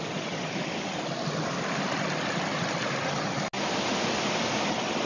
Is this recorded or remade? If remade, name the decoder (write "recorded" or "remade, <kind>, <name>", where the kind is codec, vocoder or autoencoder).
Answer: recorded